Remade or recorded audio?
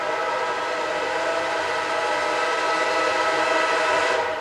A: recorded